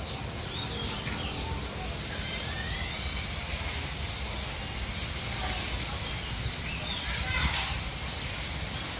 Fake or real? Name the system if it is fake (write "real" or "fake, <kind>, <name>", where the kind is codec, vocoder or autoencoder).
real